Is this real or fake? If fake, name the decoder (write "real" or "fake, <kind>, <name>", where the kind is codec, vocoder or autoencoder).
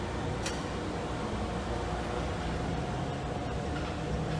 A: real